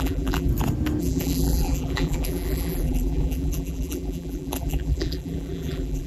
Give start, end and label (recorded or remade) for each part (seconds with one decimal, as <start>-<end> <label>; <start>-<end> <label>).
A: 0.0-0.5 remade; 0.5-1.0 recorded; 1.0-6.1 remade